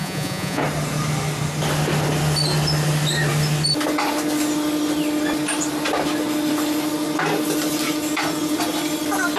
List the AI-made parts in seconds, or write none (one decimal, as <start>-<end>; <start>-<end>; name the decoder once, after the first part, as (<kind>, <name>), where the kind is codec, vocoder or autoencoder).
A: 0.0-0.6 (vocoder, Vocos)